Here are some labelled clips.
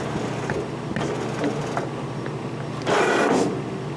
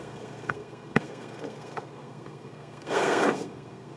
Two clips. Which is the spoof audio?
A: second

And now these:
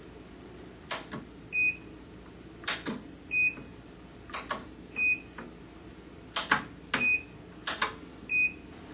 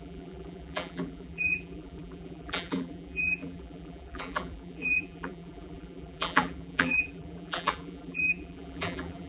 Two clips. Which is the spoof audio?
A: second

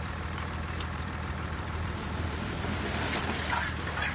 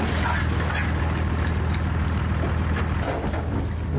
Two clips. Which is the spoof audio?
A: first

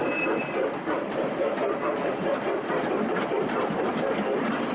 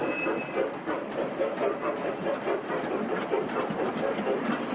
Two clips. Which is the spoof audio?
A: first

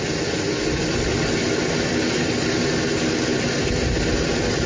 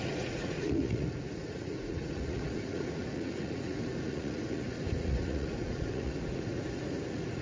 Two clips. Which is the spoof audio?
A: second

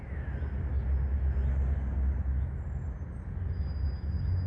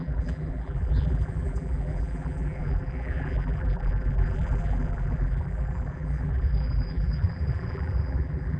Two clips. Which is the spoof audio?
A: second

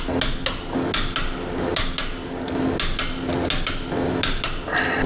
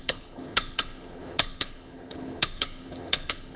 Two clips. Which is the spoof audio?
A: second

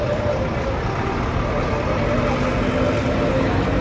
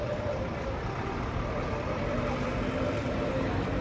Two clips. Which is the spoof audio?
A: second